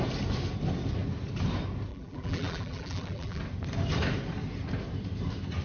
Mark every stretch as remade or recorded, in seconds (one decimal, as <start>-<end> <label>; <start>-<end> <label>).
0.0-1.9 recorded; 1.9-3.4 remade; 3.4-5.6 recorded